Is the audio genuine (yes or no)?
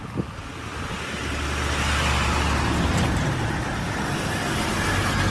yes